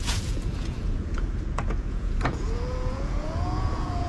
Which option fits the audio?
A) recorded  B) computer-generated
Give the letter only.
B